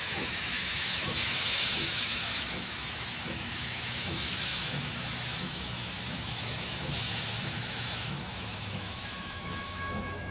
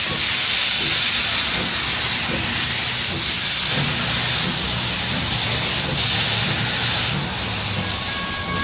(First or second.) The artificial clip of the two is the first